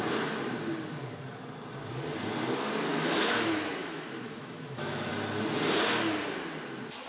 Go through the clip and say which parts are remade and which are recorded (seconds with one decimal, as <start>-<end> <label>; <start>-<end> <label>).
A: 0.0-2.9 recorded; 2.9-5.1 remade; 5.1-7.1 recorded